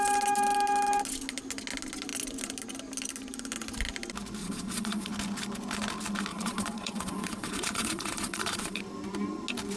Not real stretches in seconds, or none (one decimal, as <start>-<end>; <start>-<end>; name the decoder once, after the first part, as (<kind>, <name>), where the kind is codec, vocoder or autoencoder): 4.4-5.1 (vocoder, Vocos); 6.3-8.8